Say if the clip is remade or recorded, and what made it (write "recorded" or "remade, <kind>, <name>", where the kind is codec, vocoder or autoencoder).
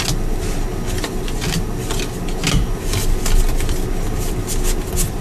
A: recorded